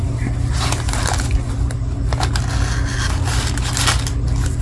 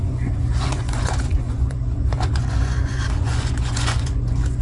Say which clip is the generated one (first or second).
second